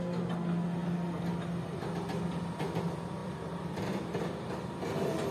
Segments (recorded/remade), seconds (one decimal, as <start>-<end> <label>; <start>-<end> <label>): 0.0-3.2 recorded; 3.2-4.7 remade; 4.7-5.3 recorded